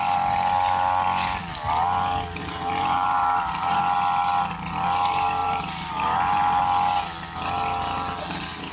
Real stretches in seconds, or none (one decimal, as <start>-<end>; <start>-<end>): 0.0-2.4; 3.8-5.4; 6.6-8.7